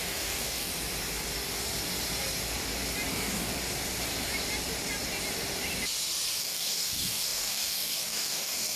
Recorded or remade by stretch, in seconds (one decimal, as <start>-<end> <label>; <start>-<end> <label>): 0.0-0.7 remade; 0.7-3.1 recorded; 3.1-3.5 remade; 3.5-6.4 recorded; 6.4-8.8 remade